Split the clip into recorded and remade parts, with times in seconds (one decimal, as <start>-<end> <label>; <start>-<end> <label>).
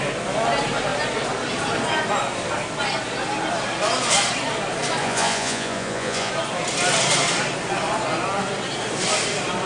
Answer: 0.0-5.0 recorded; 5.0-6.3 remade; 6.3-9.7 recorded